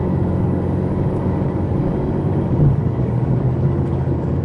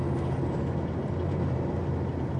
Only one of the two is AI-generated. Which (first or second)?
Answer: first